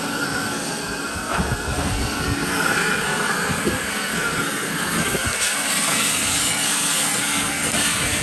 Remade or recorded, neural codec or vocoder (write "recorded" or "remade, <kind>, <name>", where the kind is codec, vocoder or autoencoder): remade, codec, SNAC